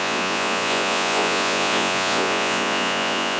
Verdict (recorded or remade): remade